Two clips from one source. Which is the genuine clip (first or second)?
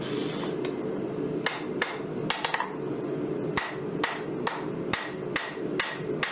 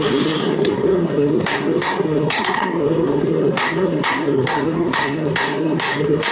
first